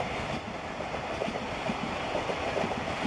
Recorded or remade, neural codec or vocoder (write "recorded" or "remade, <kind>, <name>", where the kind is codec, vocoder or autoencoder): remade, vocoder, BigVGAN v2